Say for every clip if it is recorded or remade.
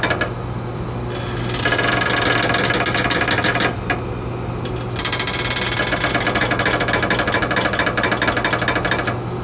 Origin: recorded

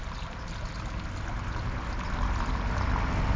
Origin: recorded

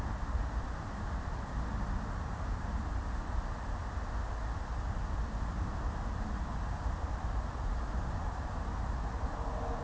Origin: recorded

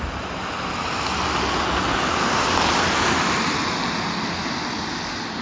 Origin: recorded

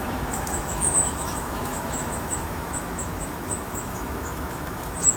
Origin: remade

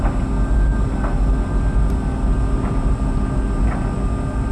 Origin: recorded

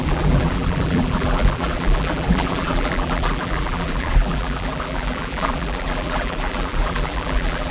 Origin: remade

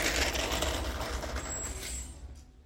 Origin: recorded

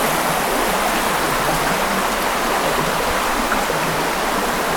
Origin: recorded